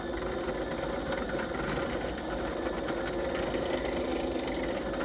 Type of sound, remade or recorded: recorded